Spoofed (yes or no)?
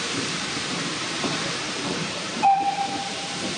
yes